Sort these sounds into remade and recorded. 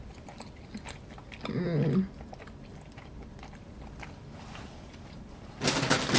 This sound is remade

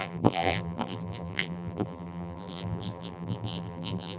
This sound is remade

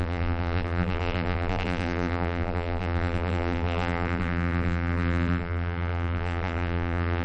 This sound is remade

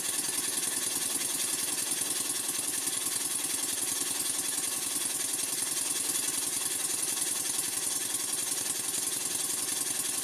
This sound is recorded